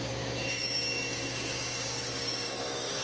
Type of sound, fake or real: fake